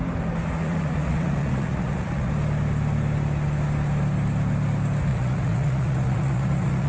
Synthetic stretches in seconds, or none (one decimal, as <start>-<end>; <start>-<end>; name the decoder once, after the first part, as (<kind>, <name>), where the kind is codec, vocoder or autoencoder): 0.6-2.3 (vocoder, Vocos); 5.1-6.9